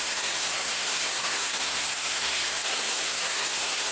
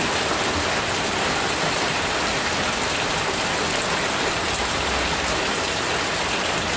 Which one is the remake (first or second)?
first